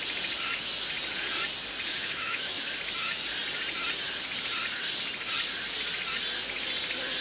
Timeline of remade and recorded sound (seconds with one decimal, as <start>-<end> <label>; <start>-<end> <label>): 0.0-1.9 recorded; 1.9-2.6 remade; 2.6-7.2 recorded